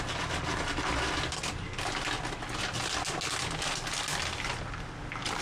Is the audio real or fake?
real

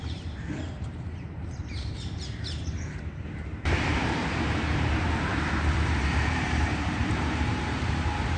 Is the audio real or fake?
fake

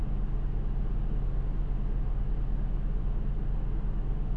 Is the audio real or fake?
real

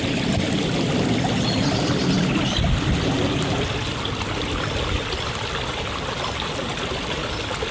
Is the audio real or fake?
real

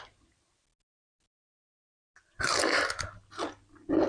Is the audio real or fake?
real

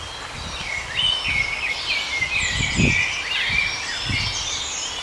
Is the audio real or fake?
real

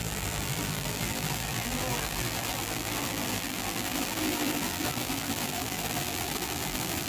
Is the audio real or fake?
fake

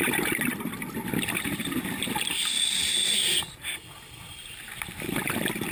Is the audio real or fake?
real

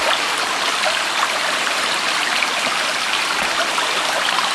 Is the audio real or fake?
real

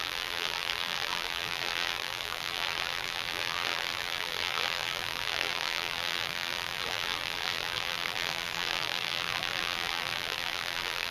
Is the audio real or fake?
fake